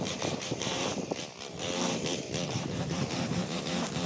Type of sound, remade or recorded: remade